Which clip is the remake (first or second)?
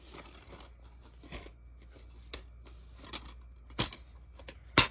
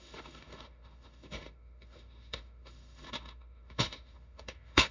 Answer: second